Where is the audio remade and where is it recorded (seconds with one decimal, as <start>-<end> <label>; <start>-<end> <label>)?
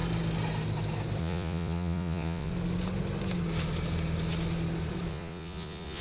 0.0-1.2 recorded; 1.2-2.5 remade; 2.5-5.1 recorded; 5.1-6.0 remade